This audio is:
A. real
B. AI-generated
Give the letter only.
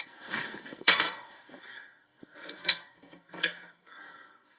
B